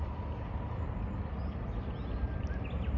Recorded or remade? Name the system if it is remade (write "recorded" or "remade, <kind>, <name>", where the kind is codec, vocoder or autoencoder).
recorded